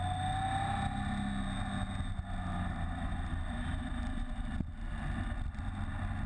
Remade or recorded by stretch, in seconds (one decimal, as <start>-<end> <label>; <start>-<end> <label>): 0.0-2.5 recorded; 2.5-4.5 remade; 4.5-6.3 recorded

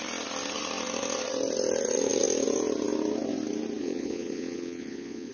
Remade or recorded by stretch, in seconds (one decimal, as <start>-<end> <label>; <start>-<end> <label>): 0.0-3.8 recorded; 3.8-5.3 remade

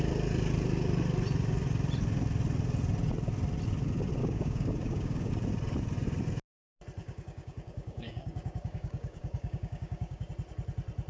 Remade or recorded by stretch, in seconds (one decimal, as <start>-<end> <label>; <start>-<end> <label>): 0.0-4.2 recorded; 4.2-5.3 remade; 5.3-7.0 recorded; 7.0-10.3 remade; 10.3-11.1 recorded

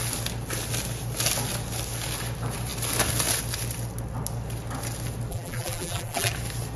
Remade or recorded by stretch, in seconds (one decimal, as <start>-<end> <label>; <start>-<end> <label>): 0.0-5.3 recorded; 5.3-6.3 remade; 6.3-6.8 recorded

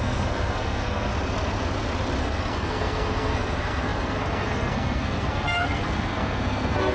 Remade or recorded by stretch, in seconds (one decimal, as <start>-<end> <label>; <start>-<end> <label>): 0.0-1.1 remade; 1.1-2.2 recorded; 2.2-6.9 remade

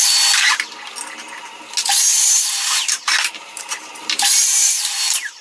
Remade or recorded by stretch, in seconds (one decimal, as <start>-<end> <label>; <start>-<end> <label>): 0.0-2.1 recorded; 2.1-5.4 remade